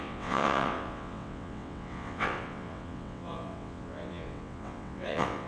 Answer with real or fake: fake